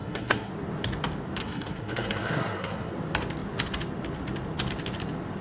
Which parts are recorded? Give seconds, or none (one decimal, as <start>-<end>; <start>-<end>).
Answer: 0.5-1.4; 2.9-5.4